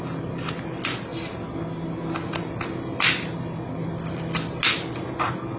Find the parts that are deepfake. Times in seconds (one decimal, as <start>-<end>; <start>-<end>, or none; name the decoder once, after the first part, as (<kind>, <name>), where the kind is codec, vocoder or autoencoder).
none